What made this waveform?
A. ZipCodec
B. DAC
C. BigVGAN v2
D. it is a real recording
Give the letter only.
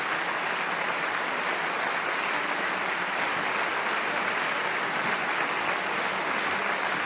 D